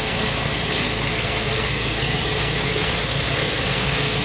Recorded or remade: remade